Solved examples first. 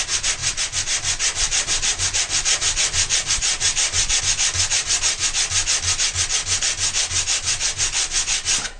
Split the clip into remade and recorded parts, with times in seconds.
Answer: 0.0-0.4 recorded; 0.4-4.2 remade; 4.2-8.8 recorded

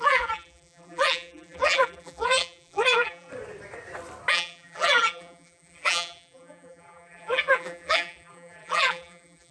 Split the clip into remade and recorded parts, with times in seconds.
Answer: 0.0-3.3 remade; 3.3-4.3 recorded; 4.3-9.5 remade